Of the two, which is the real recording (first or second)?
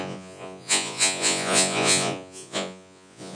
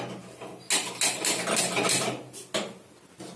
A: second